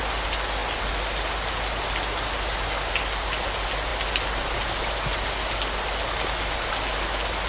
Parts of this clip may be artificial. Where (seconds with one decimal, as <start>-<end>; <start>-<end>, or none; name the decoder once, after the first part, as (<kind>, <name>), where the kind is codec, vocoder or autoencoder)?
none